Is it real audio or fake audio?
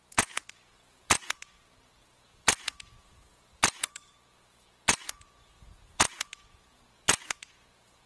fake